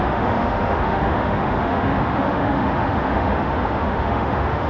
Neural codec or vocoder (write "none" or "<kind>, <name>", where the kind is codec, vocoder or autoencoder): autoencoder, DAC-VAE